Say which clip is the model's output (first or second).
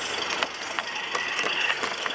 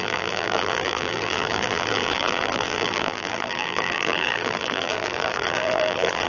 second